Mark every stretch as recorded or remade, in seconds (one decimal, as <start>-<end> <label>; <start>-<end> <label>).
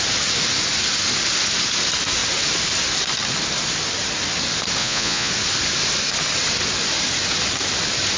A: 0.0-4.8 recorded; 4.8-5.3 remade; 5.3-8.2 recorded